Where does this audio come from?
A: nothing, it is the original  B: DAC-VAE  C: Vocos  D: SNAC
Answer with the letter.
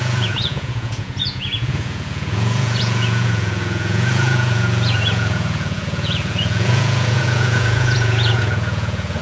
C